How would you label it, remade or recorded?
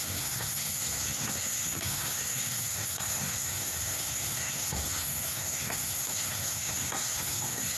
remade